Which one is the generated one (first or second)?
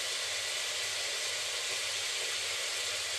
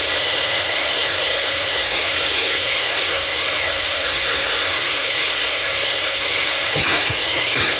second